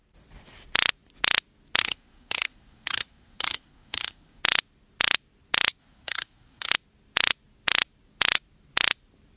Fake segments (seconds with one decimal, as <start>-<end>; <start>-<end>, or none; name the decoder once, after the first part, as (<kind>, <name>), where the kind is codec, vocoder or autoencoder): 1.8-4.4 (codec, SNAC); 5.8-6.7